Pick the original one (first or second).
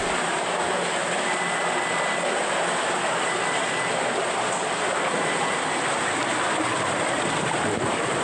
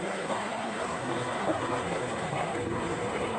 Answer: first